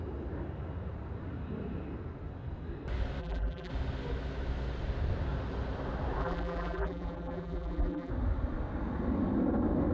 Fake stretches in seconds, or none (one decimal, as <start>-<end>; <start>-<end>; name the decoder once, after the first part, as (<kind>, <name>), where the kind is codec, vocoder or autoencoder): 3.2-3.7 (vocoder, BigVGAN v2); 6.2-8.1